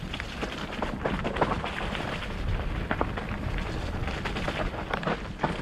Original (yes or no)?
yes